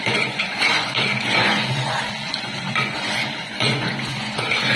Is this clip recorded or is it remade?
remade